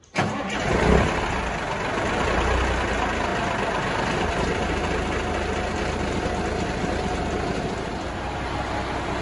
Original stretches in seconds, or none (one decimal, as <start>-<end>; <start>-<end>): 0.0-3.3; 4.3-9.2